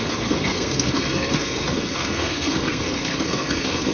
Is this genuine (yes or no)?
no